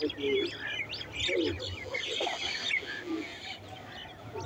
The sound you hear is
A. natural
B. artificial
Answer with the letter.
A